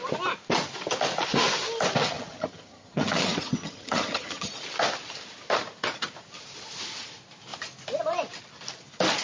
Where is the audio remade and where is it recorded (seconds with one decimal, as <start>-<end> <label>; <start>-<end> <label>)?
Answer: 0.0-2.0 recorded; 2.0-4.5 remade; 4.5-9.2 recorded